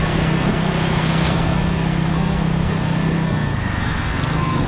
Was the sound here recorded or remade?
remade